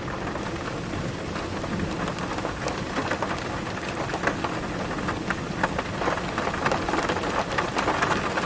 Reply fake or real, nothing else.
real